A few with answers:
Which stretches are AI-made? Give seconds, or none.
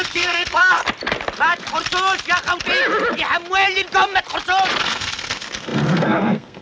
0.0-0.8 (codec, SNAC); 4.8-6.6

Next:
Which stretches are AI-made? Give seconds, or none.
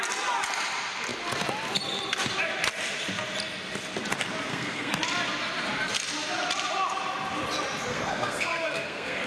4.5-5.0 (codec, SNAC); 7.9-9.3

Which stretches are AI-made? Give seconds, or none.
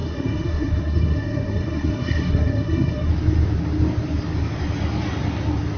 0.0-3.1 (codec, SNAC)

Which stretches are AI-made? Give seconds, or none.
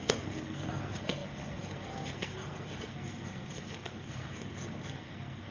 0.0-5.5 (codec, SNAC)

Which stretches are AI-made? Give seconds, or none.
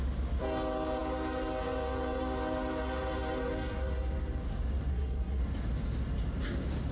4.9-5.4 (codec, SNAC)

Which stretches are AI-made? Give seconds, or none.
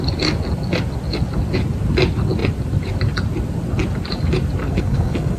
4.6-5.4 (codec, SNAC)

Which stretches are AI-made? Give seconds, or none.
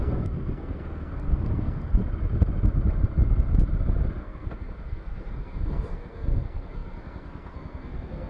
0.0-2.0 (codec, SNAC); 4.2-8.3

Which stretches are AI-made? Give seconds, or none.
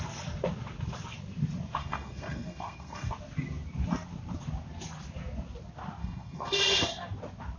1.8-3.1 (codec, SNAC); 6.0-6.6